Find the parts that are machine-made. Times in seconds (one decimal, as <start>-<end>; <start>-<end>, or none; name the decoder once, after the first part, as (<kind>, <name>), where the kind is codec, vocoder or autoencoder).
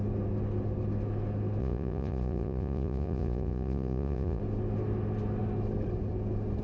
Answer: 1.6-4.4 (vocoder, Vocos)